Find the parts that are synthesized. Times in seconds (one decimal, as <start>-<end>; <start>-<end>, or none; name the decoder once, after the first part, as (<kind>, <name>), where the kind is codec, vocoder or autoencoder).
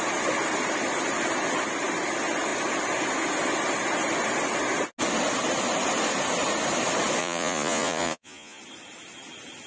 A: 7.2-8.6 (vocoder, Vocos)